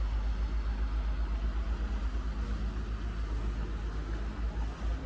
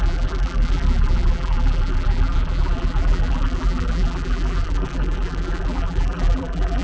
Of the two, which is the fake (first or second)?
second